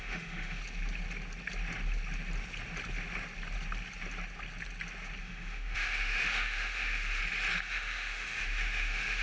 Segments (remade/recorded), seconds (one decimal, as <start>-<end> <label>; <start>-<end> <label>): 0.0-0.6 remade; 0.6-5.2 recorded; 5.2-7.2 remade; 7.2-7.7 recorded; 7.7-9.2 remade